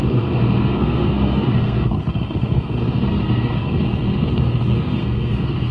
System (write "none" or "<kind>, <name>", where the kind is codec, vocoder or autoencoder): codec, SNAC